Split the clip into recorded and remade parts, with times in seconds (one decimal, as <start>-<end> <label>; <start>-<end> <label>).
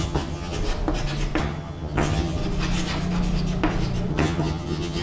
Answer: 0.0-0.6 remade; 0.6-1.4 recorded; 1.4-2.4 remade; 2.4-4.1 recorded; 4.1-5.0 remade